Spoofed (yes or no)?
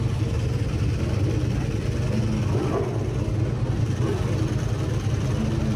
no